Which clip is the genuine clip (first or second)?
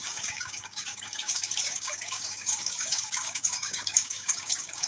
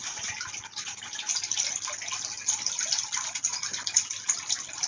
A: second